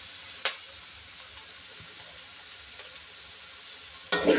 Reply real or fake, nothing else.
real